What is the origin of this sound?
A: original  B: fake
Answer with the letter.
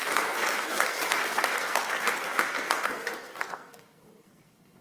B